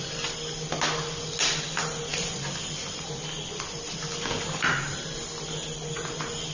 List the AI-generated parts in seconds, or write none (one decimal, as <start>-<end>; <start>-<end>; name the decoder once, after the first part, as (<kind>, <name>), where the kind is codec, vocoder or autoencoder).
2.1-5.4 (vocoder, BigVGAN v2)